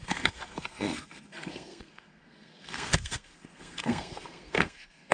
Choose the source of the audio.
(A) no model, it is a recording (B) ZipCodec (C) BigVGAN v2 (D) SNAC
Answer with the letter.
D